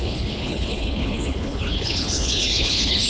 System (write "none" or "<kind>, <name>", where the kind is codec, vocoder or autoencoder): codec, HILCodec